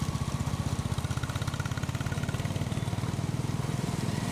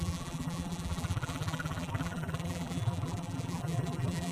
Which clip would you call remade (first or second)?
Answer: second